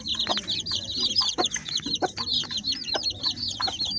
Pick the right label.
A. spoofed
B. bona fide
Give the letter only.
B